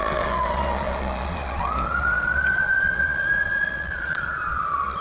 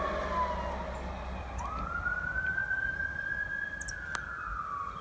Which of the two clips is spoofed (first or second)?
first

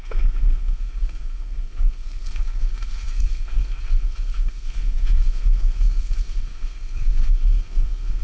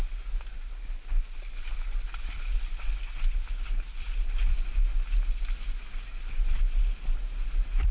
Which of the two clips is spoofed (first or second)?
first